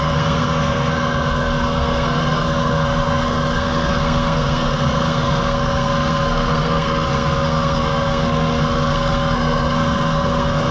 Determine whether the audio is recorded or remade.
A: remade